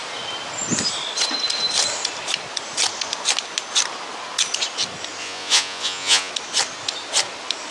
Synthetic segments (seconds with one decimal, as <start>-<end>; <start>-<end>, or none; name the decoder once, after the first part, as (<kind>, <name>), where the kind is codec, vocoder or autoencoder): 5.2-6.3 (vocoder, Vocos)